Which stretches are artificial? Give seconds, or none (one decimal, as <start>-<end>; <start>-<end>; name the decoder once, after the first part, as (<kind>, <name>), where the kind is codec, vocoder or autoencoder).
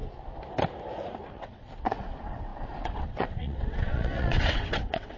1.3-5.2 (vocoder, WaveNeXt)